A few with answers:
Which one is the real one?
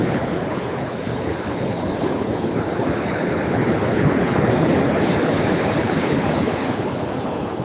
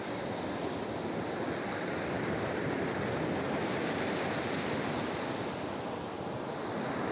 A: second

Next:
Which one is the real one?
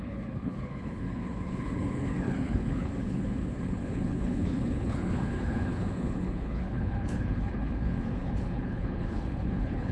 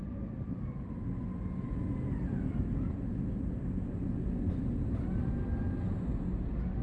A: second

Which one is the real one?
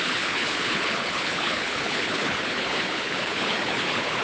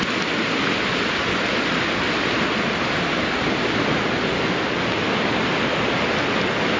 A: second